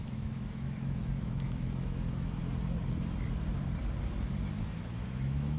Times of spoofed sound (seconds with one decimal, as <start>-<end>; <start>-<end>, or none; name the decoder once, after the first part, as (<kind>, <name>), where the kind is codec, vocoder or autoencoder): 0.0-2.4 (autoencoder, DAC-VAE); 4.8-5.6